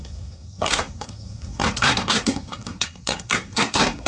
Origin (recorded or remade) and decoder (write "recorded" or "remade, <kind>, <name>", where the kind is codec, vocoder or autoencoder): remade, codec, SNAC